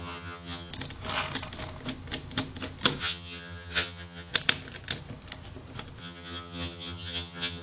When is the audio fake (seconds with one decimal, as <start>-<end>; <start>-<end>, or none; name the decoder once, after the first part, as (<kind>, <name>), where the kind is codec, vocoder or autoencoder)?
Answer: 0.0-0.7 (vocoder, HiFi-GAN); 3.0-4.3; 6.0-7.6